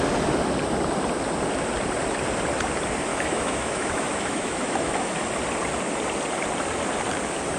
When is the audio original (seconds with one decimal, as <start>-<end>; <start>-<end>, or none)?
0.0-3.1; 5.3-7.6